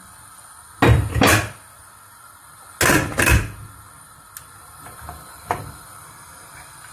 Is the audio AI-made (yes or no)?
no